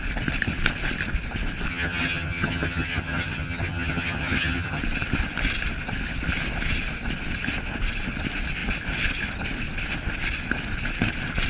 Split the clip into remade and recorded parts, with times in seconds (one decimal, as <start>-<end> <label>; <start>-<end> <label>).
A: 0.0-1.7 recorded; 1.7-4.8 remade; 4.8-11.5 recorded